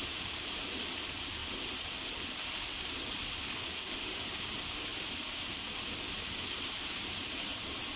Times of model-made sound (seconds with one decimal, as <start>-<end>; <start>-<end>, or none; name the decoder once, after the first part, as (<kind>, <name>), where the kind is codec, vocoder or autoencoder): 0.0-1.4 (vocoder, BigVGAN v2); 4.0-4.9; 6.3-8.0